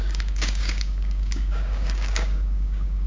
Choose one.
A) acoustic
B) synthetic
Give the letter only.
B